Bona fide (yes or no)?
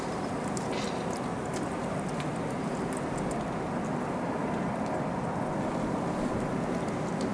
yes